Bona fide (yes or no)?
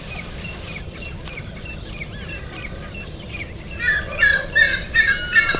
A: no